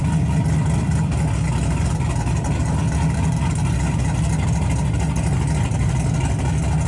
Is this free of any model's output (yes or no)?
yes